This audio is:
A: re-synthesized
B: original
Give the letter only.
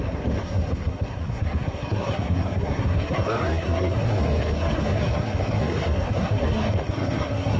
A